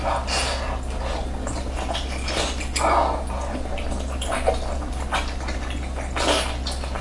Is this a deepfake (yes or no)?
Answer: no